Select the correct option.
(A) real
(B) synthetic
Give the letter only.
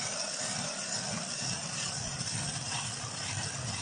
A